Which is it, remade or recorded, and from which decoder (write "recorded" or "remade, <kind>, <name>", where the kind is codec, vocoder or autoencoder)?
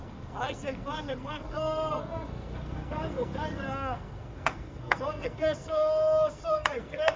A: remade, codec, SNAC